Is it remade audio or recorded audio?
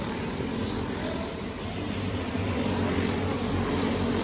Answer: recorded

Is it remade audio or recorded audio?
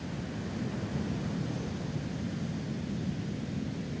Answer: recorded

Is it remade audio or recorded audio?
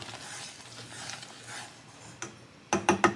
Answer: recorded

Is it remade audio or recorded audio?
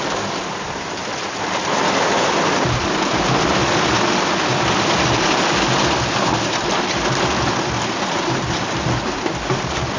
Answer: recorded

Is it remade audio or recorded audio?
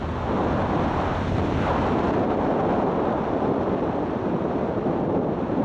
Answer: recorded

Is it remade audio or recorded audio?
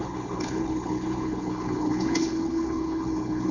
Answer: remade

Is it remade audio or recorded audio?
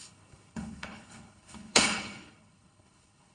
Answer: remade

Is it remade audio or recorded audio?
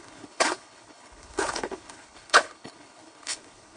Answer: remade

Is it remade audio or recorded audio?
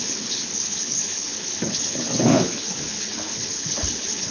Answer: remade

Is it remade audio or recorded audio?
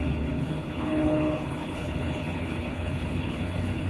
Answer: remade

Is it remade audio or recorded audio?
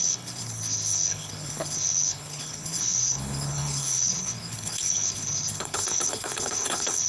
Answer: remade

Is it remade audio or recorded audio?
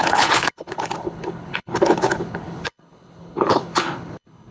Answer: remade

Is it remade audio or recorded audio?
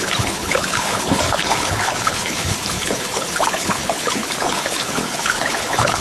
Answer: remade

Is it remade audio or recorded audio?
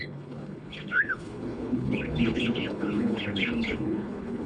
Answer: remade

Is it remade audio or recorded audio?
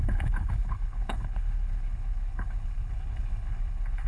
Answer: remade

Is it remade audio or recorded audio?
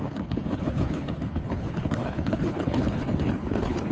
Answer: remade